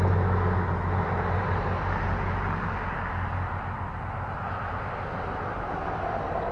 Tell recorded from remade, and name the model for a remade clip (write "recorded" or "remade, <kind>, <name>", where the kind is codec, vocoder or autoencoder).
recorded